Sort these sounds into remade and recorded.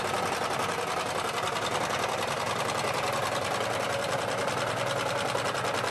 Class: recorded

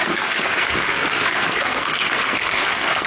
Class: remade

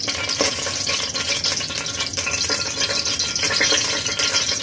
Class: recorded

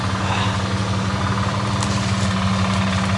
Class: recorded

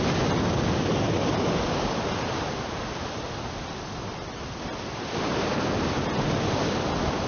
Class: recorded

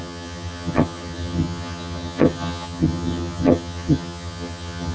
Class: remade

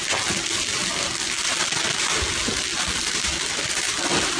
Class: recorded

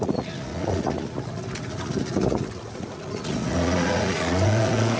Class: remade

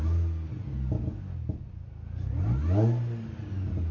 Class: recorded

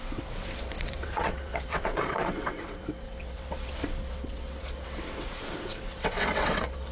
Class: remade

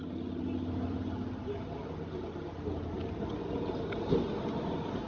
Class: recorded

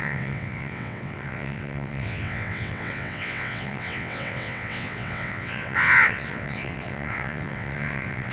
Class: remade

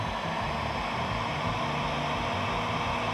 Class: recorded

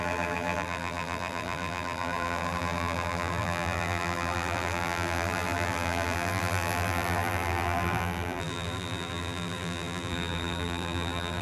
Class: remade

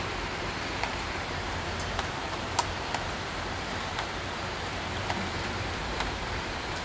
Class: remade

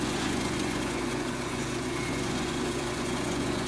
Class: remade